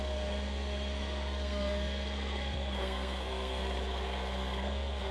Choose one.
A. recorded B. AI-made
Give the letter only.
B